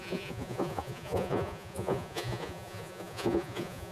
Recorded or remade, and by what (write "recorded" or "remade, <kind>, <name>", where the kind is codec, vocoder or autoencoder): remade, vocoder, Vocos